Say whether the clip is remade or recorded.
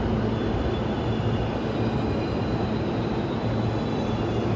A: recorded